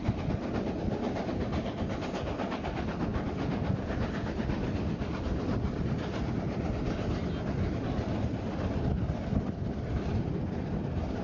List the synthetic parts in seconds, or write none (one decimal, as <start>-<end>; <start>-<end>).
none